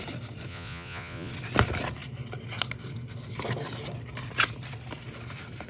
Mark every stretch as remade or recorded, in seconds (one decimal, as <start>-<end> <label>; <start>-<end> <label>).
0.0-0.5 recorded; 0.5-1.3 remade; 1.3-5.7 recorded